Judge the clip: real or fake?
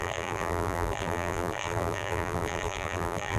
fake